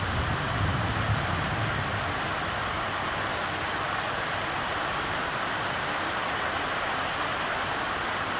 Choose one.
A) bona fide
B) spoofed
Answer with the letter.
A